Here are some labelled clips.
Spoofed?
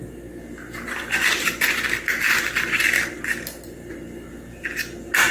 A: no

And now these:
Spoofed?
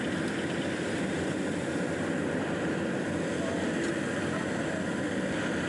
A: no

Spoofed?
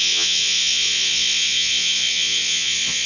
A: yes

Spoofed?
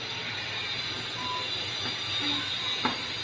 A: no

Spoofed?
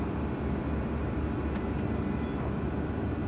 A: no